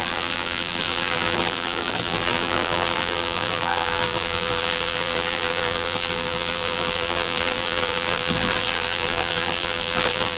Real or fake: fake